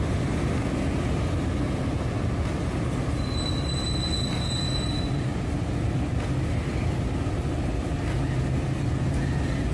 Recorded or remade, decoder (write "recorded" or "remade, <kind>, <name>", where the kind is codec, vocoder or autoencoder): recorded